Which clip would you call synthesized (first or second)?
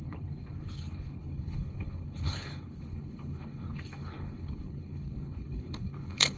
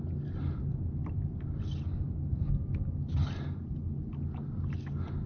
first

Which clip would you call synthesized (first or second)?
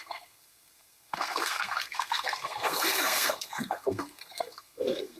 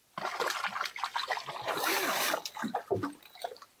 first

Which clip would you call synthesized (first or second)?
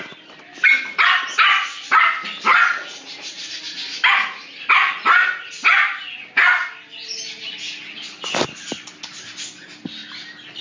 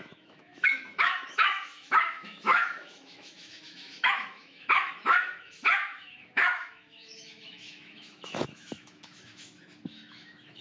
second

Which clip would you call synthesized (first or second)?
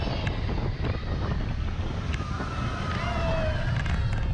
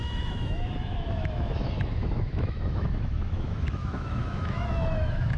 second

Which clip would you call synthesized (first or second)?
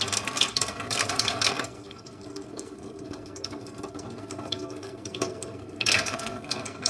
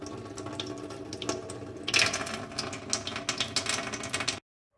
first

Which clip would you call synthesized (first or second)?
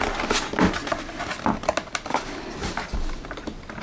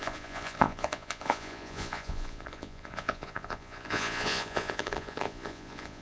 second